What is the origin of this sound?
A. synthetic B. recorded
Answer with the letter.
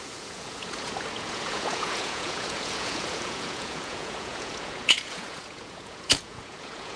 A